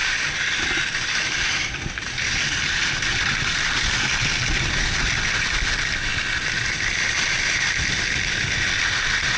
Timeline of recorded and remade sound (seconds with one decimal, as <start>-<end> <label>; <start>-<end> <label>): 0.0-9.4 recorded